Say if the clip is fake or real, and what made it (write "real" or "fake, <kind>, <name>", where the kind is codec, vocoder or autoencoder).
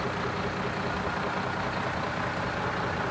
real